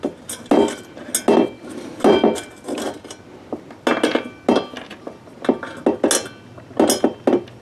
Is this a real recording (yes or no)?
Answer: yes